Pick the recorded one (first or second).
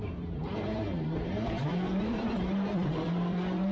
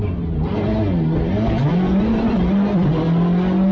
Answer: second